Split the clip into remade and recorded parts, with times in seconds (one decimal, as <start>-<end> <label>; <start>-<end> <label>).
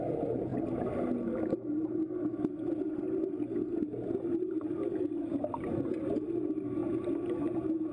0.0-7.9 recorded